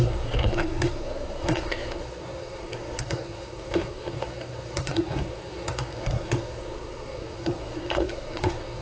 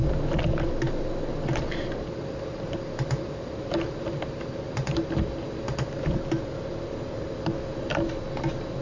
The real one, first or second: second